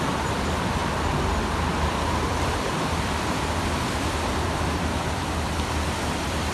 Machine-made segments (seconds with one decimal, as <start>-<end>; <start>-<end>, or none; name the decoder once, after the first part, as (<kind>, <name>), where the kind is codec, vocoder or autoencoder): 0.0-0.8 (vocoder, BigVGAN v2); 2.3-5.2; 5.7-6.5